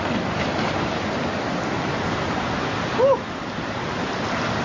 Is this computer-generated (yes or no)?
no